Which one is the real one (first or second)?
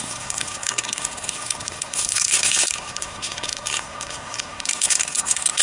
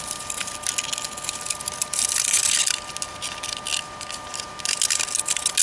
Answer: second